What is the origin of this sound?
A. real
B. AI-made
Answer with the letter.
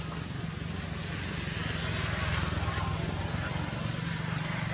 A